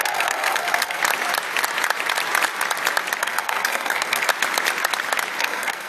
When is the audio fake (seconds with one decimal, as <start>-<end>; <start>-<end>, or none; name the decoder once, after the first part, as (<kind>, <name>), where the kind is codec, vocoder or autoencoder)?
0.0-1.0 (codec, SNAC); 3.2-4.3; 5.4-5.9